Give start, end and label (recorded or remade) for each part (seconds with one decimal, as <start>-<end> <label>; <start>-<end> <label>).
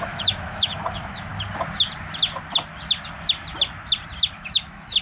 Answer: 0.0-1.3 remade; 1.3-4.3 recorded; 4.3-5.0 remade